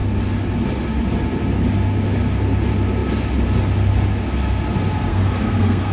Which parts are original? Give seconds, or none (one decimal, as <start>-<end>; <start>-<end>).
0.0-5.1